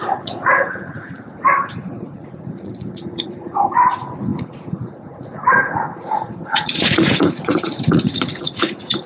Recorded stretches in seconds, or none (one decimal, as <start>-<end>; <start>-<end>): 1.3-1.8